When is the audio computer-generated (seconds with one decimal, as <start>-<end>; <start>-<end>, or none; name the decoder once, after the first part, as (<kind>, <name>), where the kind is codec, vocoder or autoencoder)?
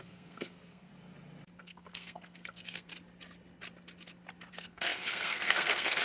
0.0-0.9 (codec, SNAC); 1.6-2.9; 4.5-6.0